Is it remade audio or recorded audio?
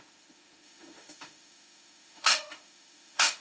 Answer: remade